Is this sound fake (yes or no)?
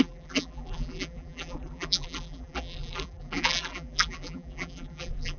yes